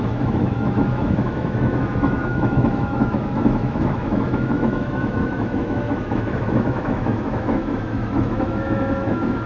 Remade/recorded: remade